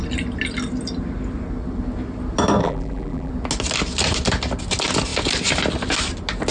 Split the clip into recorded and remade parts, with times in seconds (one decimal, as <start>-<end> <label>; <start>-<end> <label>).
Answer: 0.0-2.6 recorded; 2.6-3.3 remade; 3.3-6.5 recorded